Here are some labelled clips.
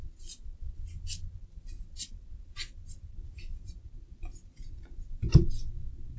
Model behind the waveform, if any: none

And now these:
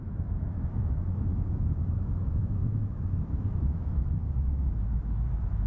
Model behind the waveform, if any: autoencoder, DAC-VAE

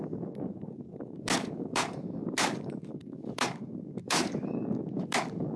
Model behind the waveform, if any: codec, DAC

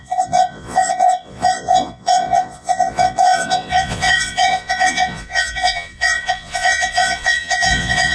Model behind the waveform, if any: vocoder, Vocos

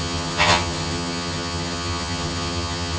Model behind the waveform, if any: vocoder, HiFi-GAN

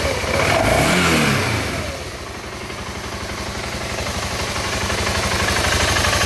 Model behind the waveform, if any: none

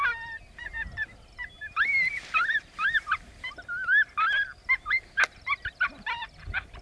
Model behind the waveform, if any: none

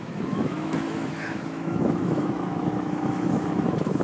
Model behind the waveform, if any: autoencoder, DAC-VAE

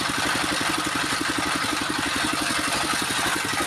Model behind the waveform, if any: none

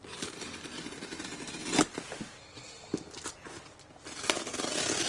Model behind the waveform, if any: none